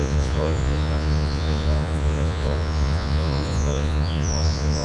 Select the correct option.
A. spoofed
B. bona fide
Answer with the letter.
A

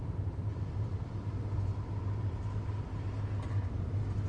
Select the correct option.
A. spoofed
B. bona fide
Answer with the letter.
B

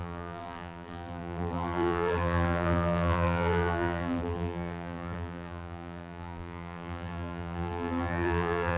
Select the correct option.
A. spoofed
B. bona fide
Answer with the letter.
A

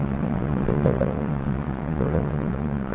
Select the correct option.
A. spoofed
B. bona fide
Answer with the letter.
A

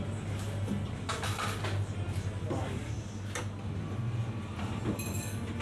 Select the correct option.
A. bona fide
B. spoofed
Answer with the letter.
A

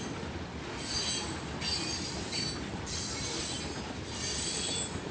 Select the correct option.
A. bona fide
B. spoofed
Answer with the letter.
A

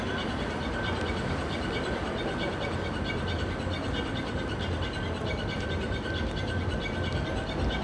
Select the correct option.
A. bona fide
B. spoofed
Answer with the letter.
A